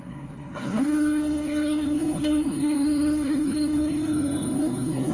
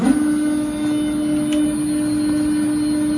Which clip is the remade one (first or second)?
first